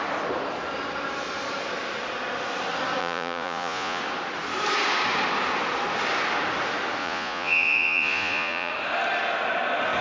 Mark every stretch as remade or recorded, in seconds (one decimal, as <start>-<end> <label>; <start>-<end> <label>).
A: 0.0-3.0 recorded; 3.0-4.0 remade; 4.0-7.0 recorded; 7.0-8.7 remade; 8.7-10.0 recorded